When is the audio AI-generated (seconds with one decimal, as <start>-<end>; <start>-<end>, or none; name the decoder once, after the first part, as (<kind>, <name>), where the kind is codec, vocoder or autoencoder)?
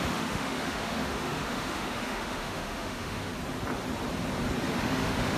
0.0-3.3 (autoencoder, DAC-VAE); 4.8-5.4